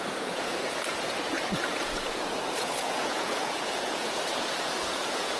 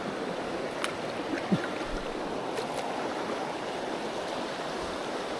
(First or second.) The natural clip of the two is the second